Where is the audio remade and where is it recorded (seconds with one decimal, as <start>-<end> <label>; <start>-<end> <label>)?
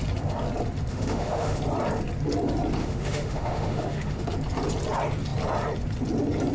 0.0-0.9 recorded; 0.9-1.6 remade; 1.6-2.8 recorded; 2.8-4.2 remade; 4.2-6.5 recorded